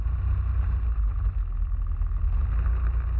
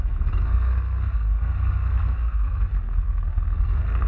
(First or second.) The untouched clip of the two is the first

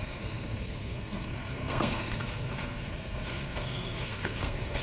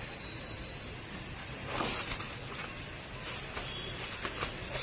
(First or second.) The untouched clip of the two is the second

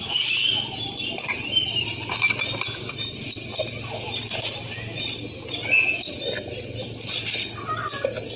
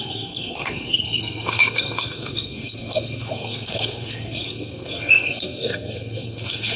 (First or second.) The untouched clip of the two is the first